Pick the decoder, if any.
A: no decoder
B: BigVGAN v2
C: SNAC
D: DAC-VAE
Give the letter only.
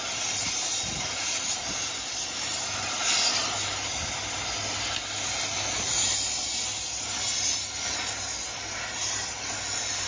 A